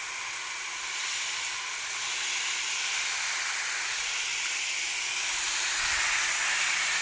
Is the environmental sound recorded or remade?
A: recorded